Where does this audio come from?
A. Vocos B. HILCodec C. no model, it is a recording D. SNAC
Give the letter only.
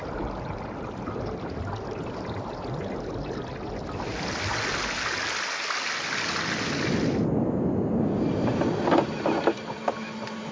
C